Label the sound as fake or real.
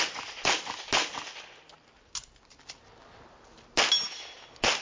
real